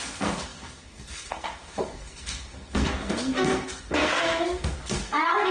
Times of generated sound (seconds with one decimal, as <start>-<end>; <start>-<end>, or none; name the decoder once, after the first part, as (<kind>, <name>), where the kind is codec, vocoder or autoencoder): 0.0-5.5 (codec, SNAC)